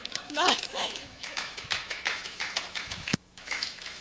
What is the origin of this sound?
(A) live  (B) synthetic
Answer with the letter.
B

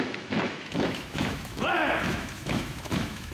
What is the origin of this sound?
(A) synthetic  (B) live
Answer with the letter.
A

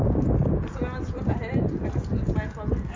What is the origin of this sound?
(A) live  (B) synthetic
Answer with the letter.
A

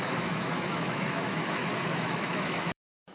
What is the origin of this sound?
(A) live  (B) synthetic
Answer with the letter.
B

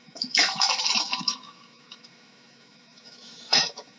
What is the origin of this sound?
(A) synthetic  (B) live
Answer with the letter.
A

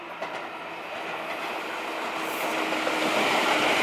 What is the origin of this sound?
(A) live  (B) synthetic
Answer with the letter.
A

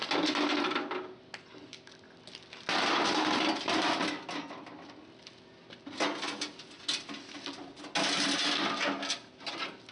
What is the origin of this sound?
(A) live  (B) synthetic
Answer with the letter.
A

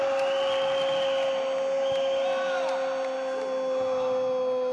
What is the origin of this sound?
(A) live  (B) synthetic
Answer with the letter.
A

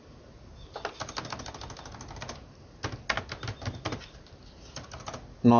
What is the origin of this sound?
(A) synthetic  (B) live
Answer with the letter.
B